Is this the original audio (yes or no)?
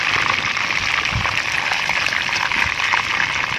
yes